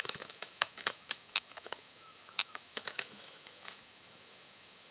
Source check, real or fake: fake